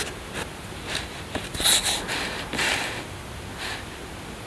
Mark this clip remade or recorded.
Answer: recorded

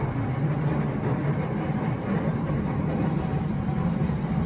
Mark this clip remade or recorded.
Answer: recorded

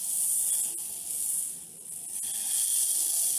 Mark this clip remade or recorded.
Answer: recorded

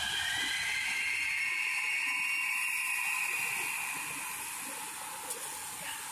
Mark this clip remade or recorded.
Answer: recorded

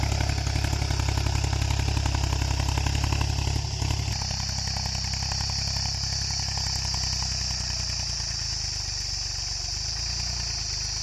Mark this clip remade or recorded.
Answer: recorded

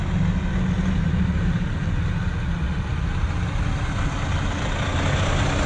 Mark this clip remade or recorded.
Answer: recorded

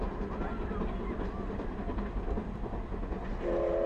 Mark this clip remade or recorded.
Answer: recorded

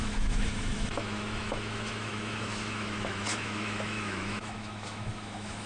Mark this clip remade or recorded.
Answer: remade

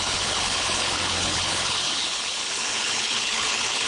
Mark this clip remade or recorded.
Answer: remade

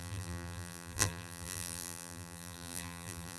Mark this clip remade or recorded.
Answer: remade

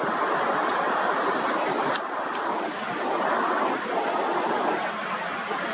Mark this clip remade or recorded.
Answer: recorded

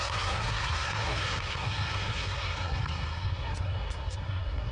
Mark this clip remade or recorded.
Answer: remade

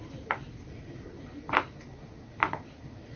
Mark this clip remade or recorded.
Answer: recorded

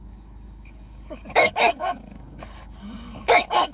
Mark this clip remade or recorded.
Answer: remade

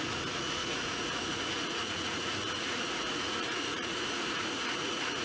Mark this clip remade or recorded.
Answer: remade